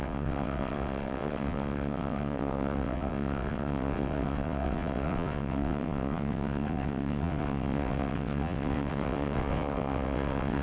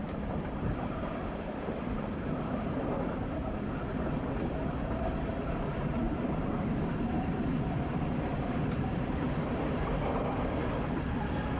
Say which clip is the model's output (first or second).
first